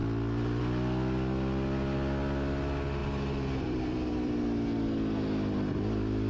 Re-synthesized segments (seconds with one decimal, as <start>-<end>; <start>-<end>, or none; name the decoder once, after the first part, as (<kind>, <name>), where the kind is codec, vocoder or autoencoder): 3.0-4.4 (vocoder, BigVGAN v2)